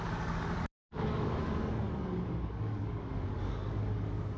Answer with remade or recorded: remade